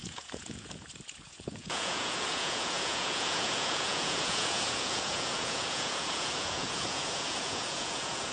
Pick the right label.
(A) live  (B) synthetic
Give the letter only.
B